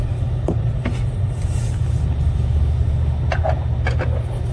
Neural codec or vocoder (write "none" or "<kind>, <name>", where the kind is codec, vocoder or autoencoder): none